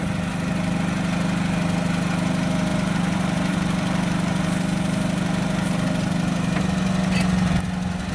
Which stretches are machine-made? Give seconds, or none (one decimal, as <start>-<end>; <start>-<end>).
2.7-5.7